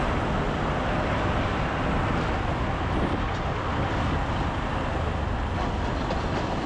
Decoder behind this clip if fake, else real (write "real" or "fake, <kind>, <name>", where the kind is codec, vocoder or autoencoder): real